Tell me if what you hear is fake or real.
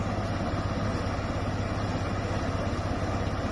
real